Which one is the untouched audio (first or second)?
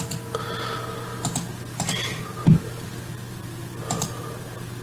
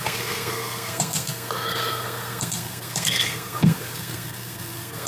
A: first